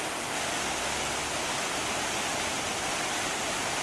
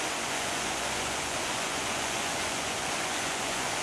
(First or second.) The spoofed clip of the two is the second